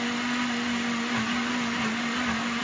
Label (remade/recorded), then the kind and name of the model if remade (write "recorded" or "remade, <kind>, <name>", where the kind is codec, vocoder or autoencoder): recorded